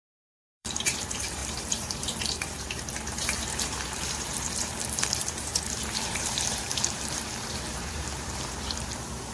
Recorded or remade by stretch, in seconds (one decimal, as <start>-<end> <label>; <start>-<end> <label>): 0.0-5.5 remade; 5.5-6.0 recorded; 6.0-9.3 remade